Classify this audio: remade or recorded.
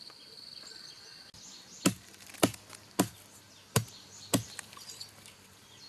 recorded